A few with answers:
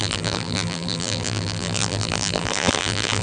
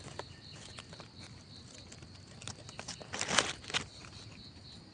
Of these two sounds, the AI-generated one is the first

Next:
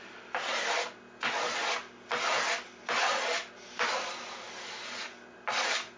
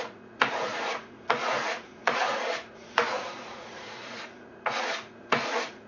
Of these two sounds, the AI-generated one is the second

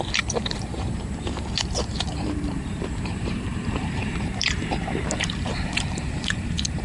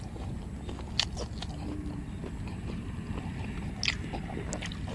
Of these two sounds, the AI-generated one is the first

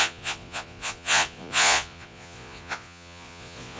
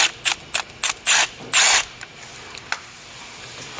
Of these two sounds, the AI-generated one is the first